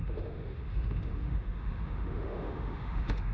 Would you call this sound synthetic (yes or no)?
yes